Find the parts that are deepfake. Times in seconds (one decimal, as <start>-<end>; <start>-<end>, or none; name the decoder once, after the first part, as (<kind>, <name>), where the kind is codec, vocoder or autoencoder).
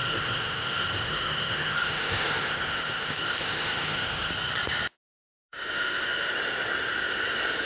0.0-4.3 (autoencoder, DAC-VAE); 5.5-6.3